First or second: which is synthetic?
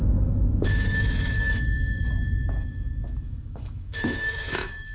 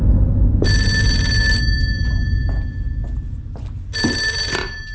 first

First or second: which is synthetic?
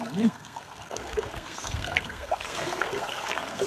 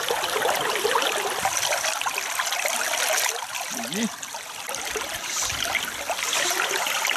first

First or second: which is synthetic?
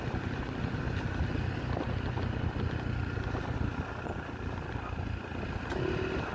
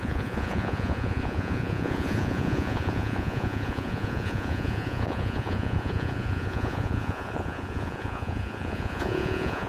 second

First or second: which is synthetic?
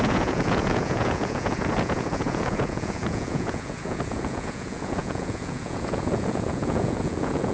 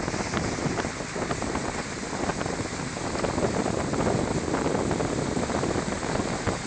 first